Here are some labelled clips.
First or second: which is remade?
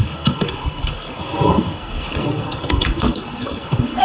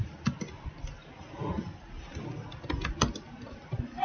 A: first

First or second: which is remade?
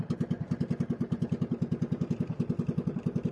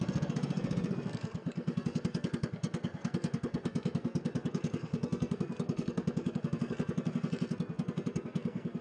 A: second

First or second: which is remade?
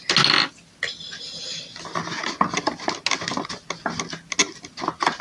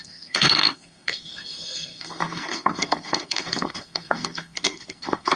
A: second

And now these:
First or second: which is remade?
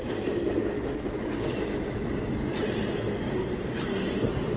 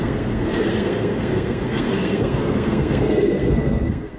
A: second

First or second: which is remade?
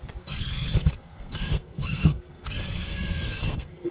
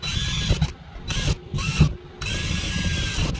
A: first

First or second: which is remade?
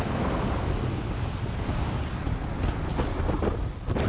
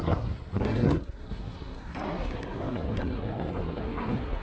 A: second